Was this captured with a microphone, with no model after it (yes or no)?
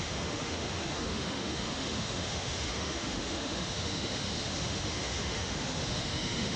no